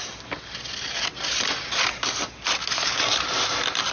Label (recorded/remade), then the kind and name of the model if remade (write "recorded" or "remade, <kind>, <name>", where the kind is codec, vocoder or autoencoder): recorded